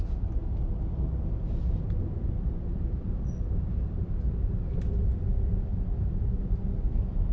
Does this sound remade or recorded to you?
recorded